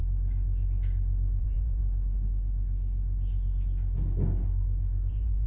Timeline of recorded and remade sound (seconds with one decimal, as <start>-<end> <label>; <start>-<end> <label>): 0.0-1.4 recorded; 1.4-1.8 remade; 1.8-5.1 recorded; 5.1-5.5 remade